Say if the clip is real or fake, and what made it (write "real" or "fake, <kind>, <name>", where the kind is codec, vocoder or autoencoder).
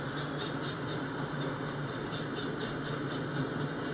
real